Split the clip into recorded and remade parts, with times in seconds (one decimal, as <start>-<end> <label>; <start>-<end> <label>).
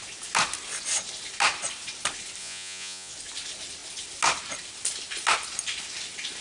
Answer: 0.0-2.4 recorded; 2.4-3.1 remade; 3.1-6.4 recorded